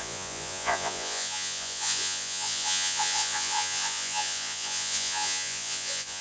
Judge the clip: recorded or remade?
remade